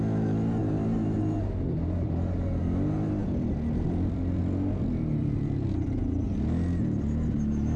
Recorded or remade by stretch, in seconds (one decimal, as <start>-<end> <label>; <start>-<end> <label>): 0.0-3.2 recorded; 3.2-4.4 remade; 4.4-5.2 recorded; 5.2-5.9 remade; 5.9-7.8 recorded

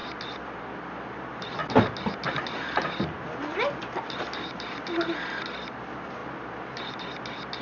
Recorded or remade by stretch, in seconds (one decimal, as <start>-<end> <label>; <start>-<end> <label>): 0.0-7.6 recorded

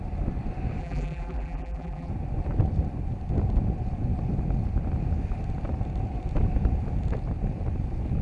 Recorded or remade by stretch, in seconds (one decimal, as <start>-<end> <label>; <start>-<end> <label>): 0.0-0.8 recorded; 0.8-2.1 remade; 2.1-8.2 recorded

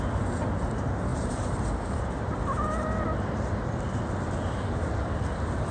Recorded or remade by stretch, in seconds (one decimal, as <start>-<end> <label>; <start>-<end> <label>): 0.0-1.1 recorded; 1.1-2.1 remade; 2.1-5.7 recorded

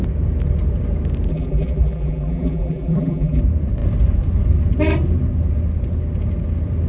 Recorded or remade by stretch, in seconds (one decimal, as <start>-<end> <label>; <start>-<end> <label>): 0.0-1.3 recorded; 1.3-3.4 remade; 3.4-6.9 recorded

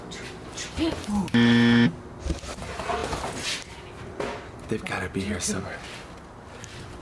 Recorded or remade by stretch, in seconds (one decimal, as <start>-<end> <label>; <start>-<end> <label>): 0.0-7.0 recorded

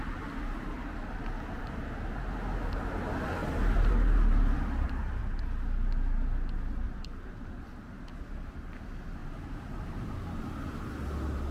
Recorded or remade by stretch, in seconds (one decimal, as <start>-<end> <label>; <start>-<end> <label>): 0.0-3.4 recorded; 3.4-5.2 remade; 5.2-9.2 recorded; 9.2-10.9 remade; 10.9-11.5 recorded